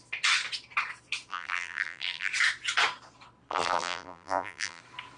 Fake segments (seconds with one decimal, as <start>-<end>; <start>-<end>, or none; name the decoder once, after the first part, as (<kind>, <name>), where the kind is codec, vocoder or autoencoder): 1.3-2.3 (vocoder, BigVGAN v2); 3.5-4.8